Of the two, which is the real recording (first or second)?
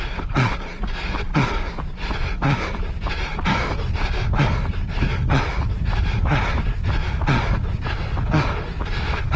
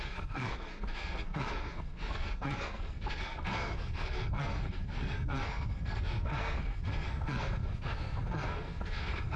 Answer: first